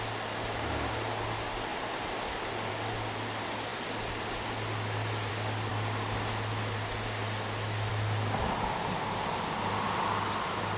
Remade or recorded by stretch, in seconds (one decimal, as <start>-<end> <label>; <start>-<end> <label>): 0.0-10.8 recorded